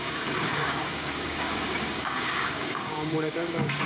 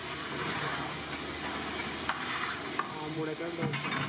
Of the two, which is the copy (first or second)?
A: first